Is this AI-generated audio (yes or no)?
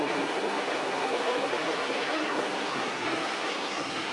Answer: yes